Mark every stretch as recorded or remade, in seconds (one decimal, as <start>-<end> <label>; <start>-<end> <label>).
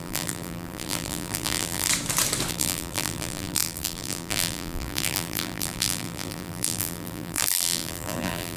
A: 0.0-1.9 remade; 1.9-2.5 recorded; 2.5-8.6 remade